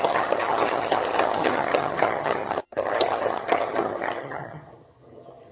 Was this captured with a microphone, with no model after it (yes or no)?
no